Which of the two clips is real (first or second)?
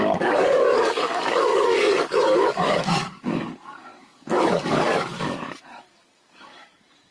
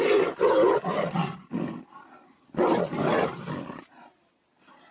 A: second